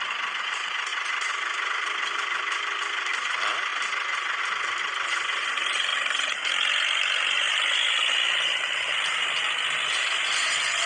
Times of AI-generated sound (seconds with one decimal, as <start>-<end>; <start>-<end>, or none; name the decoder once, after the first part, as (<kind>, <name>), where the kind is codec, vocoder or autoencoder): 0.0-3.7 (vocoder, BigVGAN v2); 4.4-10.9